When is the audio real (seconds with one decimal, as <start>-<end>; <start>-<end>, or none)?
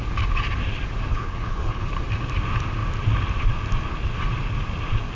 0.0-1.1; 1.9-5.2